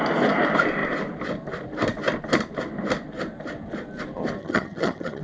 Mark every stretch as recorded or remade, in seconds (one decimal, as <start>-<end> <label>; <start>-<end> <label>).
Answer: 0.0-4.4 recorded; 4.4-5.2 remade